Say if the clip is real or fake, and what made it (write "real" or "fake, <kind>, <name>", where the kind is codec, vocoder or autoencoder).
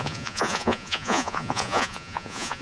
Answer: fake, vocoder, Vocos